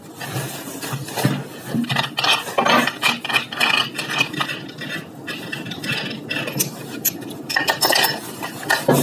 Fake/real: real